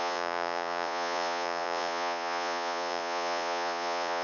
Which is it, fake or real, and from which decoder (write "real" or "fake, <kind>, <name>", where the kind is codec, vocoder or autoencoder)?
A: fake, vocoder, Vocos